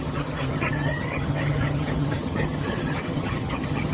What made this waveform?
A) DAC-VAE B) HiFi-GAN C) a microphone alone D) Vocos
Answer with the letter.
B